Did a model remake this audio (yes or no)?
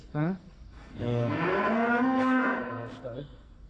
yes